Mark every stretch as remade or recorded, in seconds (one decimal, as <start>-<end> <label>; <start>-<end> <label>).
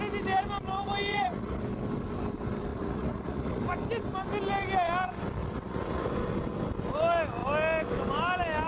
0.0-1.1 recorded; 1.1-1.6 remade; 1.6-2.7 recorded; 2.7-3.6 remade; 3.6-5.4 recorded; 5.4-6.1 remade; 6.1-8.7 recorded